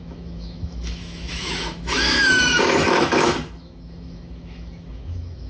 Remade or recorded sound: remade